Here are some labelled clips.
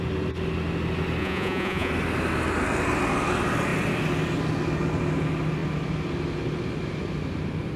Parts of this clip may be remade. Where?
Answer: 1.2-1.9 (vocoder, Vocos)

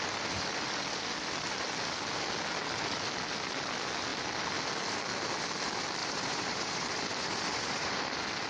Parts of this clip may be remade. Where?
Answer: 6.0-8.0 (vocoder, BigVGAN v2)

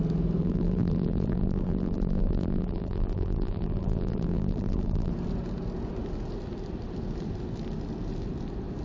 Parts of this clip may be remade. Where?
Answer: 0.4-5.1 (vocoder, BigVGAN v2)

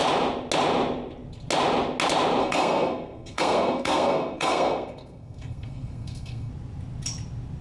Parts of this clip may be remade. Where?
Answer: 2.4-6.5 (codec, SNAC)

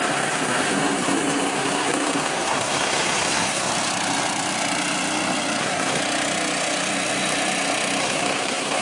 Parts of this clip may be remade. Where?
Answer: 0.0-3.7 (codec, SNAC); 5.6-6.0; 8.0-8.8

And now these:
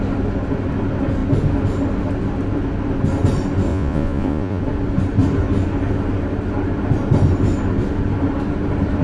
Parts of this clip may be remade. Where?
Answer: 3.7-4.6 (vocoder, Vocos)

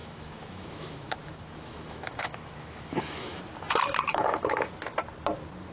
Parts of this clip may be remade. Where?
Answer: 0.0-3.4 (autoencoder, DAC-VAE); 4.1-4.7

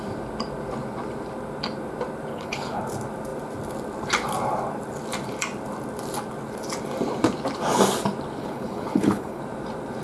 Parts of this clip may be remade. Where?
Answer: 2.3-2.8 (codec, HILCodec); 8.4-9.4